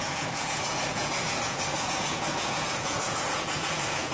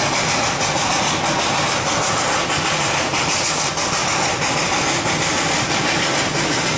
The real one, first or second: second